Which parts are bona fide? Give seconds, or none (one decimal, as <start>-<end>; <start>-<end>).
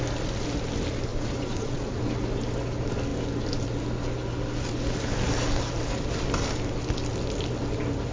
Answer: 0.0-1.1; 2.1-8.1